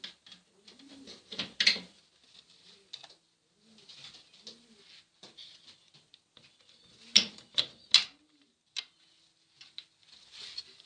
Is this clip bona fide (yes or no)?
yes